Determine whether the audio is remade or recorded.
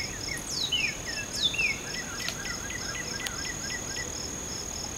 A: recorded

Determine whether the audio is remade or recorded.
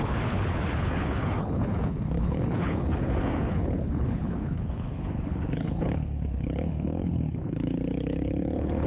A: remade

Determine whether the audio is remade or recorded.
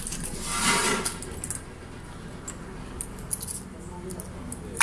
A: recorded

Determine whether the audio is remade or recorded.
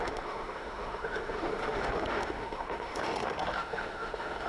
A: remade